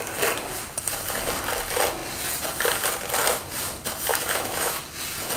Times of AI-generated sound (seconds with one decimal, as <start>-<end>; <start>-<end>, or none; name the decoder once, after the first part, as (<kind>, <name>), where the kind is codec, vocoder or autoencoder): 4.1-4.8 (autoencoder, DAC-VAE)